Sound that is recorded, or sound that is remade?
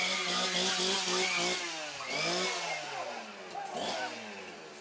recorded